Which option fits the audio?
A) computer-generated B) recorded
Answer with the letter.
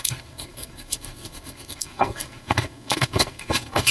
A